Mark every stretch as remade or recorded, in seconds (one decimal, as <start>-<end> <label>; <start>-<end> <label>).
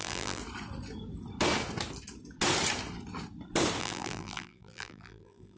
0.0-0.4 remade; 0.4-3.8 recorded; 3.8-5.6 remade